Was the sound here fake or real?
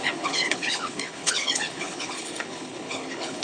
fake